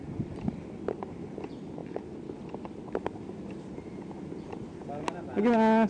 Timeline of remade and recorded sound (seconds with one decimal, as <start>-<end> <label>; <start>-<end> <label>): 0.0-5.9 recorded